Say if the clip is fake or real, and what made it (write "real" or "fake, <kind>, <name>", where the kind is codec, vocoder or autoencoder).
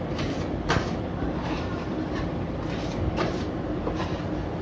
fake, vocoder, BigVGAN v2